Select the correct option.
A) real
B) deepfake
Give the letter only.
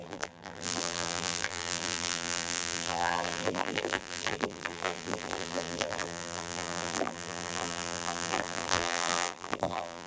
B